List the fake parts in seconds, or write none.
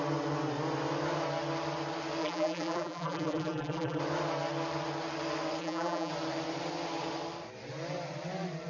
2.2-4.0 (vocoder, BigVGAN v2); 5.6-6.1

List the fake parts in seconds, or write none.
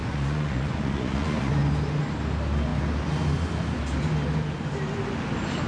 0.0-1.5 (vocoder, Vocos)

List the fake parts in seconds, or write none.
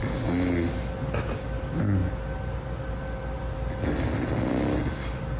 none